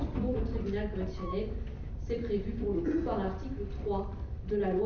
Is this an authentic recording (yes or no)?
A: yes